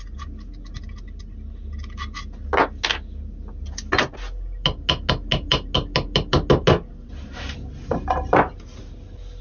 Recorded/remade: recorded